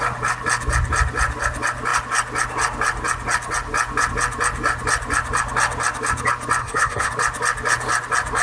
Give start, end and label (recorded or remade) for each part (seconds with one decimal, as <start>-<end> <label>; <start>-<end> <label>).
0.0-6.6 recorded; 6.6-7.1 remade; 7.1-8.4 recorded